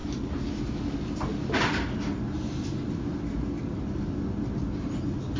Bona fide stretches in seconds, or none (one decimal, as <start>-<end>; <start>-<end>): 0.0-5.4